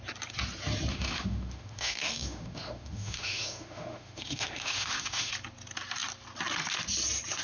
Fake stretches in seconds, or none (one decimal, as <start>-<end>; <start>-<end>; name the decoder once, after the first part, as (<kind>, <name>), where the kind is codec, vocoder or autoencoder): 0.9-5.3 (autoencoder, DAC-VAE)